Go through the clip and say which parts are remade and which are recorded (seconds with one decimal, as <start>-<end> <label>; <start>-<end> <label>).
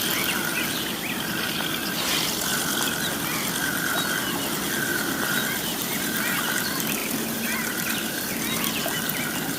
0.0-4.9 recorded; 4.9-6.5 remade; 6.5-7.0 recorded; 7.0-8.3 remade; 8.3-9.6 recorded